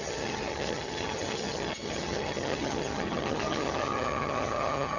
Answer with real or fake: fake